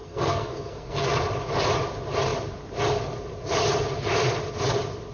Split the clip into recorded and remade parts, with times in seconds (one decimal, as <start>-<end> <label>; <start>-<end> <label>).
0.0-1.1 remade; 1.1-5.1 recorded